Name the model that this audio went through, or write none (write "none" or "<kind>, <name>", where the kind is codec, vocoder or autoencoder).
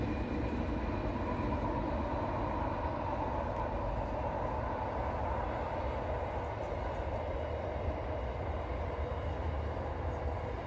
none